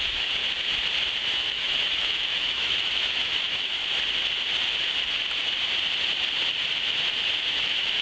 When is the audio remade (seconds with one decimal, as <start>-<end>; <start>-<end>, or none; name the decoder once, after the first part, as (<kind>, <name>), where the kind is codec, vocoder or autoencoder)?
0.0-0.4 (autoencoder, DAC-VAE); 1.3-3.8; 7.4-8.0